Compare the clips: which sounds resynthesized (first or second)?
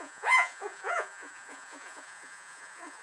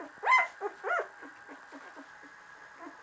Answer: first